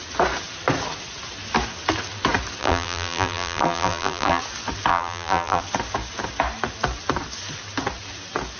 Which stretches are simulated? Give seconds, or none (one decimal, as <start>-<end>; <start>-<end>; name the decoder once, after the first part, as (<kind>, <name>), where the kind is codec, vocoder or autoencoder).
2.6-4.4 (vocoder, BigVGAN v2); 4.9-5.6